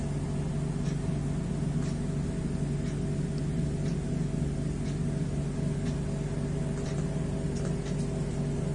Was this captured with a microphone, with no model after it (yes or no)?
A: yes